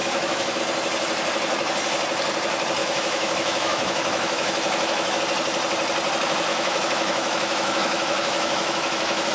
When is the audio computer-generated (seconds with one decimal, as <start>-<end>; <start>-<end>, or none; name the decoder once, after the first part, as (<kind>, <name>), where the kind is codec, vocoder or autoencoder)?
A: 0.0-0.6 (autoencoder, DAC-VAE); 2.8-5.2; 6.5-9.3